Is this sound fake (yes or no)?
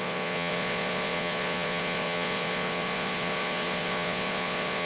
yes